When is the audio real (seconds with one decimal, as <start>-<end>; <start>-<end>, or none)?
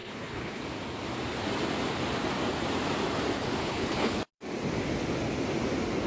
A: 0.6-3.6; 4.2-6.1